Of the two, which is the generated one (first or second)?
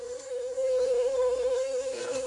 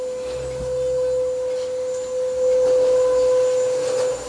first